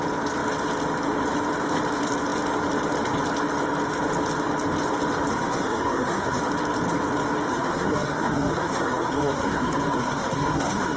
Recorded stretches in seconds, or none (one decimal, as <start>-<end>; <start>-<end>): 0.0-5.3; 6.4-7.5